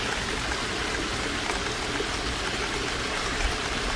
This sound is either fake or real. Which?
real